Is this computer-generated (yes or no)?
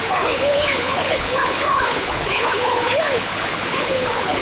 yes